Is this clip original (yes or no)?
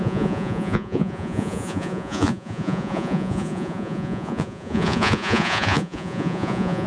no